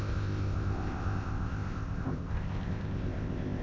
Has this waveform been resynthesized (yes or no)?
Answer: yes